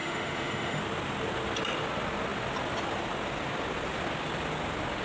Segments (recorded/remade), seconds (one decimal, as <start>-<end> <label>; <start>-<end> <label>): 0.0-0.8 remade; 0.8-5.0 recorded